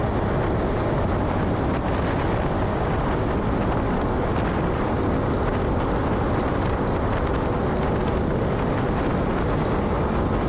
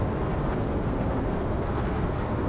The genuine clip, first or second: first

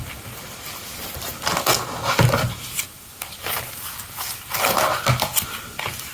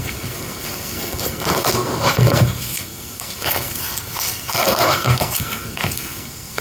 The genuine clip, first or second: first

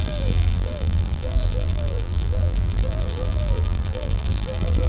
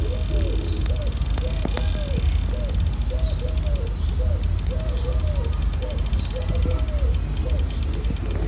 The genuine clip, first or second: second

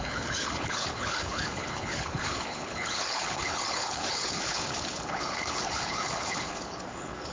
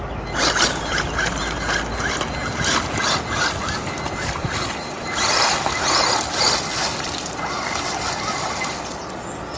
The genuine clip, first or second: second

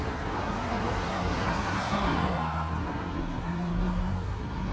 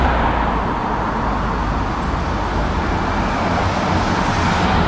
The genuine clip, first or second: second